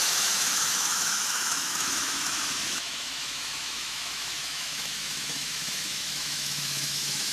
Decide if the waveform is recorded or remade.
remade